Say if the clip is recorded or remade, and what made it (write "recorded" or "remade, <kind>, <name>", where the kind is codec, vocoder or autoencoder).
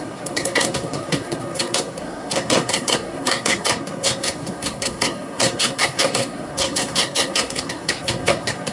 remade, codec, SNAC